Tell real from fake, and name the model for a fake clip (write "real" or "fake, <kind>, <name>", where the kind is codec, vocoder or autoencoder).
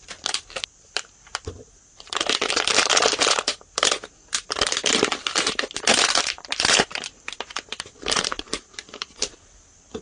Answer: fake, vocoder, BigVGAN v2